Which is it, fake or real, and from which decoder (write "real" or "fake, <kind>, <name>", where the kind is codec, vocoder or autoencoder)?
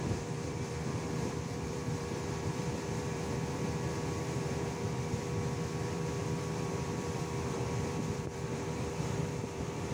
fake, vocoder, BigVGAN v2